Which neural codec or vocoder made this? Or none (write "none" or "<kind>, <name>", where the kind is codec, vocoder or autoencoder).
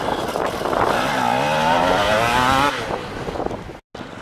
none